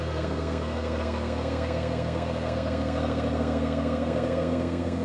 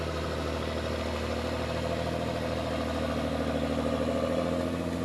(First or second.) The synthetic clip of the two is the first